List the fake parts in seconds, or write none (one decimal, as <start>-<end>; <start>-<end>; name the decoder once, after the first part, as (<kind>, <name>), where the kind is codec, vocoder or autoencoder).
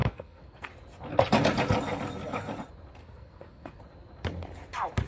0.0-0.7 (codec, SNAC); 3.0-3.8